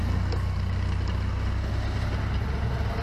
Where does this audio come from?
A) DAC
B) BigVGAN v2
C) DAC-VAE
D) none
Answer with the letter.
D